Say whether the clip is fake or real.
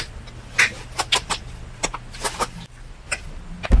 real